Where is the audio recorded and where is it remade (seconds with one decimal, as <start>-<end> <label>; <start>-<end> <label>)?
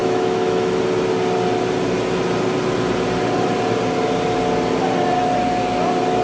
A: 0.0-0.8 remade; 0.8-6.2 recorded